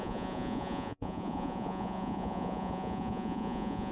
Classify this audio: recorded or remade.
remade